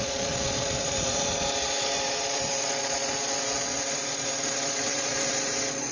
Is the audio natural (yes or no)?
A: no